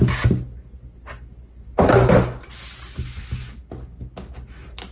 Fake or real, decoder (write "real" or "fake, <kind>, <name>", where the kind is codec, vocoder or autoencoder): real